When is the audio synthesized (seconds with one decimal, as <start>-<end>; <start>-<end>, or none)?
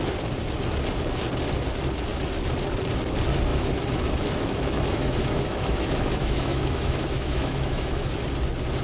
3.5-8.1